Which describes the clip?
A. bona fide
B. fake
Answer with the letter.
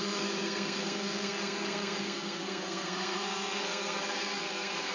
B